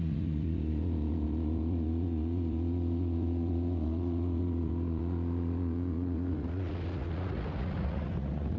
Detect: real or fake fake